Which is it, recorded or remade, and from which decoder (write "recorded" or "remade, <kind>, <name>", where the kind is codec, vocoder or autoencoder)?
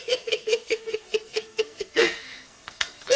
remade, codec, SNAC